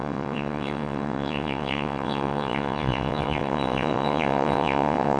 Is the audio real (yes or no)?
no